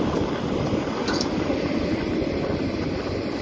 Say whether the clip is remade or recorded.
recorded